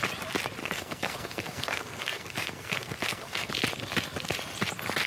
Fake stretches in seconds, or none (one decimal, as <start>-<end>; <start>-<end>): 0.6-3.5